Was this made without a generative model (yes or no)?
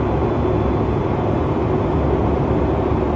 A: yes